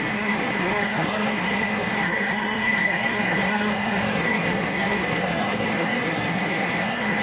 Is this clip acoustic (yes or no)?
no